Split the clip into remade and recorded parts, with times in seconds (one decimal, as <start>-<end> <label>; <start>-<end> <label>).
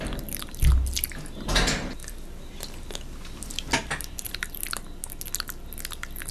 0.0-2.0 recorded; 2.0-4.3 remade; 4.3-6.3 recorded